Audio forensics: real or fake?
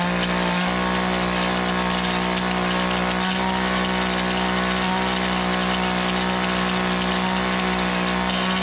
real